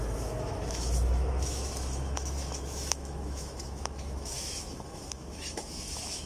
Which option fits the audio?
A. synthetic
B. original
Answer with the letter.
A